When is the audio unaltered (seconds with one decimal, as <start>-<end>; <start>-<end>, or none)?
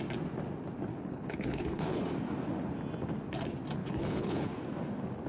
0.0-0.9; 2.0-3.8; 4.6-5.3